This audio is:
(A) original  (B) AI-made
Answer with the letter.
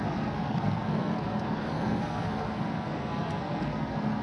B